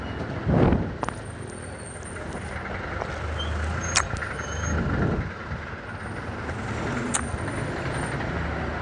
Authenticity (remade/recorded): recorded